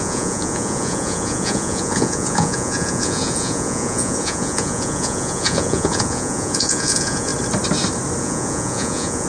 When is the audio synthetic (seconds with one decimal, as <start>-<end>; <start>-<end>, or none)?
0.0-7.3; 8.2-9.3